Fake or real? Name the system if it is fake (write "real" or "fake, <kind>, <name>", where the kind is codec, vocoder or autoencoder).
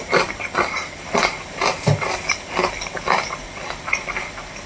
real